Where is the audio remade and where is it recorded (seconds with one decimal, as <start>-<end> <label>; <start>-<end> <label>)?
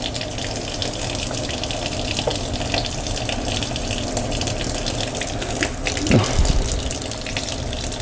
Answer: 0.0-8.0 recorded